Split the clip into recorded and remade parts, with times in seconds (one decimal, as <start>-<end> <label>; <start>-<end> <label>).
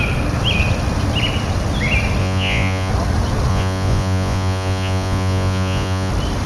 0.0-2.2 recorded; 2.2-2.9 remade; 2.9-3.5 recorded; 3.5-6.1 remade; 6.1-6.5 recorded